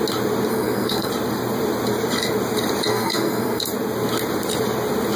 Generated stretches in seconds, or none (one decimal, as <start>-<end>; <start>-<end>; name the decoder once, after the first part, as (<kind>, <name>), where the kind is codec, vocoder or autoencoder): 0.5-1.1 (codec, SNAC); 2.9-3.6